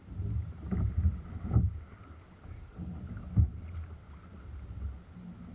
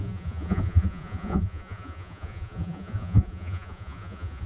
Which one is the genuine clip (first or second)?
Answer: first